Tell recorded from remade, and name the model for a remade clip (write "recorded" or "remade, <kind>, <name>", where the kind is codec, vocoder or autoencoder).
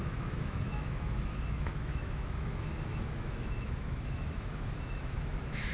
remade, autoencoder, DAC-VAE